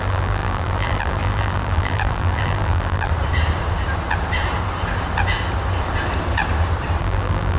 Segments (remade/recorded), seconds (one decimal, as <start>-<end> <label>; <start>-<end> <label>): 0.0-3.1 remade; 3.1-7.0 recorded; 7.0-7.6 remade